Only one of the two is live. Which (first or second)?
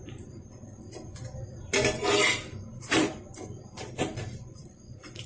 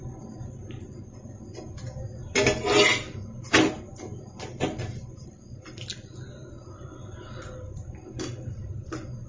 second